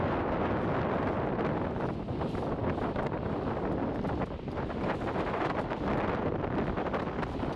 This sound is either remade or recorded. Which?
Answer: recorded